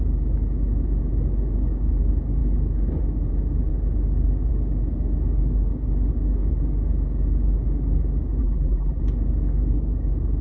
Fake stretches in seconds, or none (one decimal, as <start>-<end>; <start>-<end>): 8.4-9.0